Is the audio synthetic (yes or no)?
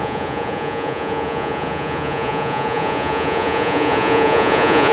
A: yes